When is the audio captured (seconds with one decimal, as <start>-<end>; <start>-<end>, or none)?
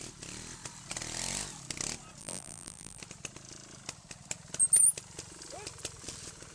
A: 0.0-2.2; 3.0-6.5